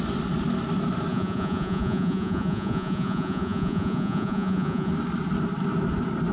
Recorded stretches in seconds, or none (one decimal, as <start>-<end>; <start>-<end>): 0.0-1.1; 4.9-6.3